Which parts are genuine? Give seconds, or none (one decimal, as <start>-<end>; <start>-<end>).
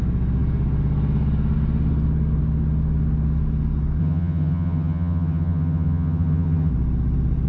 0.0-4.0; 6.7-7.5